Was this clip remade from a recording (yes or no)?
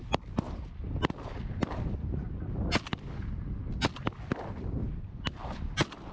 no